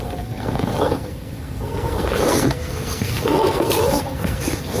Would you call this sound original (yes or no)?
no